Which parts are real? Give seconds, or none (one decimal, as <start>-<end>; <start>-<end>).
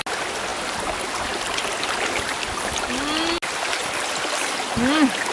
0.0-5.3